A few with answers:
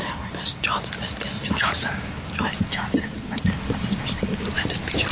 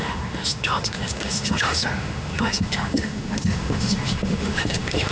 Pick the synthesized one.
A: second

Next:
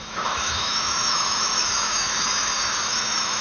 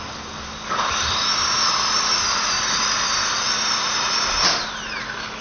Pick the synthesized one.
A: first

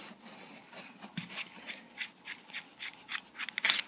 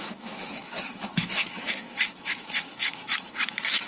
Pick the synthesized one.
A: second